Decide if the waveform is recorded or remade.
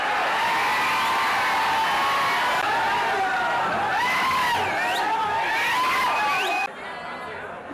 recorded